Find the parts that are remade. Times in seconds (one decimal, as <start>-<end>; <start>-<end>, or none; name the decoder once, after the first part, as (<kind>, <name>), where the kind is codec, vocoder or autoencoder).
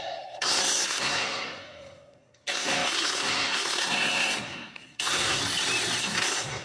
0.0-5.4 (codec, SNAC); 6.0-6.6